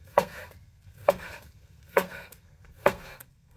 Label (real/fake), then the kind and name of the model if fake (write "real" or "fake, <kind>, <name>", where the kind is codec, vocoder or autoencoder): fake, codec, SNAC